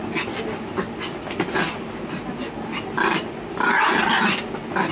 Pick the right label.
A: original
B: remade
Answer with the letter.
A